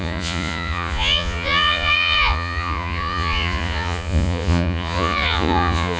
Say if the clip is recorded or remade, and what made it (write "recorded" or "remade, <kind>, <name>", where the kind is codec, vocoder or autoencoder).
remade, vocoder, Vocos